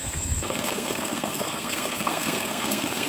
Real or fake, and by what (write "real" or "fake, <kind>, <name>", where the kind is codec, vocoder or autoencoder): fake, codec, SNAC